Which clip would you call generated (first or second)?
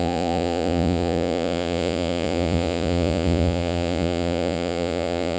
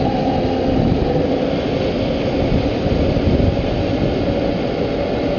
first